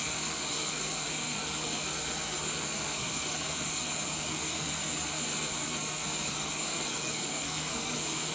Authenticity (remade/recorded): remade